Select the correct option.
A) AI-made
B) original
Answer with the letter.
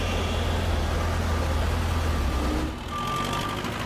B